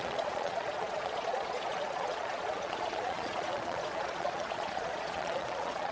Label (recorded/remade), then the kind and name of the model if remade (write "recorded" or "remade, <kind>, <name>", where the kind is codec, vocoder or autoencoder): remade, vocoder, Vocos